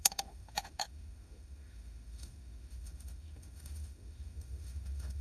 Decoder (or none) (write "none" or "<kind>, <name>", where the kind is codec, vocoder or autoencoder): autoencoder, DAC-VAE